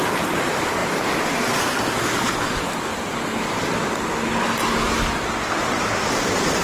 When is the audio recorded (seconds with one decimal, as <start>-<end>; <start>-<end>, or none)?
0.0-2.9; 3.6-5.6